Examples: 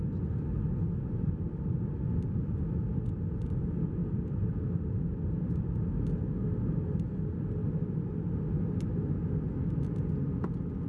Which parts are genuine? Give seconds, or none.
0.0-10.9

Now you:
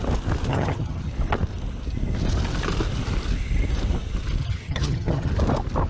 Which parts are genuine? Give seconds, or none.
0.0-0.5; 1.1-4.4; 5.3-5.9

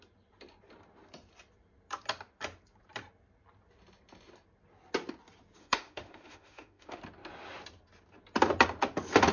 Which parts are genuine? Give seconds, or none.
0.0-5.6; 7.0-9.3

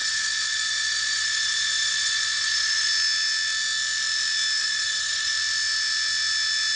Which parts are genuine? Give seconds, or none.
2.9-4.6; 5.3-6.8

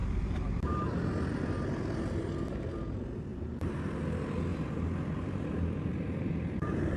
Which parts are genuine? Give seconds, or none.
1.0-3.3; 4.0-4.5

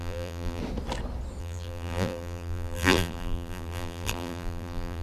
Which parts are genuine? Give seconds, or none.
0.6-1.4

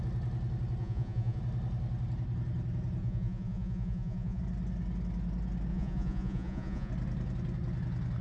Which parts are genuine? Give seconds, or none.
0.0-0.8; 1.4-3.0; 4.4-5.7; 6.9-8.2